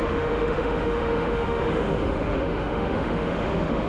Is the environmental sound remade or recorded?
remade